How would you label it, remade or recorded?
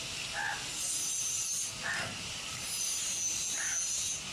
recorded